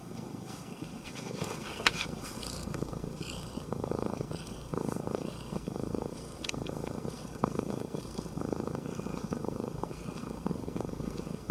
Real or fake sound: fake